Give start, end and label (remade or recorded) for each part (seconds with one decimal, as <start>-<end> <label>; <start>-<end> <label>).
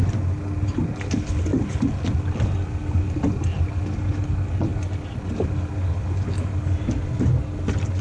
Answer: 0.0-8.0 recorded